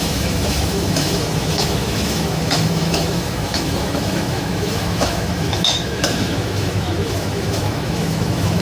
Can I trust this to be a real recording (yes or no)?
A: no